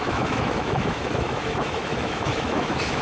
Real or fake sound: fake